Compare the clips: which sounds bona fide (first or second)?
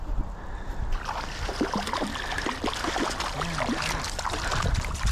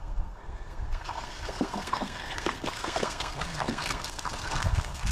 first